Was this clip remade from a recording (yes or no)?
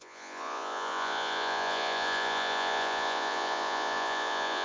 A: yes